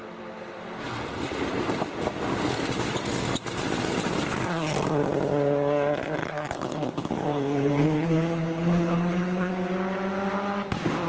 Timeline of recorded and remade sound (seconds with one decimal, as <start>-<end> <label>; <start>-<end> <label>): 0.0-6.2 recorded; 6.2-9.5 remade; 9.5-11.1 recorded

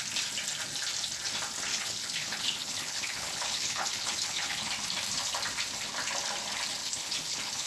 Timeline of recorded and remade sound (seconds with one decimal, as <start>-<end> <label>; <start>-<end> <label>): 0.0-1.7 recorded; 1.7-4.7 remade; 4.7-6.8 recorded; 6.8-7.7 remade